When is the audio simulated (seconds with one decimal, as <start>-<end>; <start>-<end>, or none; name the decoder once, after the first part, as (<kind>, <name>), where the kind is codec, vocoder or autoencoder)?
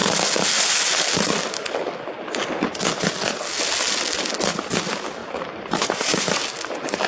5.2-6.4 (vocoder, BigVGAN v2)